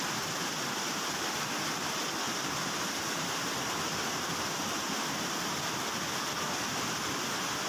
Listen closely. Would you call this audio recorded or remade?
recorded